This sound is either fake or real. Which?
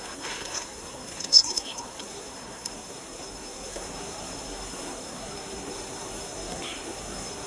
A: fake